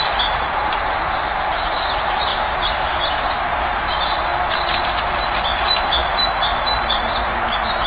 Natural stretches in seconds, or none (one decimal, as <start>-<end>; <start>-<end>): none